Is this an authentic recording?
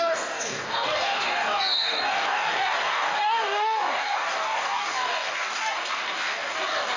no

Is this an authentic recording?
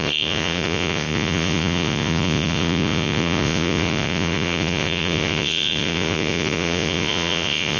no